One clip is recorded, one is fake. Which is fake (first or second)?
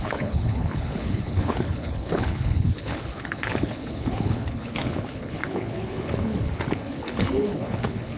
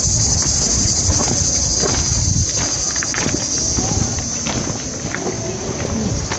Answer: first